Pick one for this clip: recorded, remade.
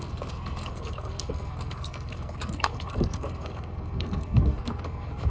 remade